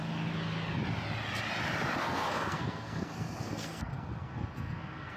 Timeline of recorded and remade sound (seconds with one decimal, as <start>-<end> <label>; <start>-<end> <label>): 0.0-2.0 recorded; 2.0-5.2 remade